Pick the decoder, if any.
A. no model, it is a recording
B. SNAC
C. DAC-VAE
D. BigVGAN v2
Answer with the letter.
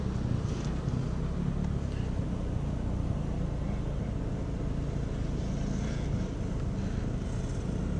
A